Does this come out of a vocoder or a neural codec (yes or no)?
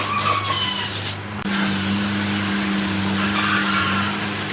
no